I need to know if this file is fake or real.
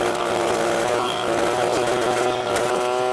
real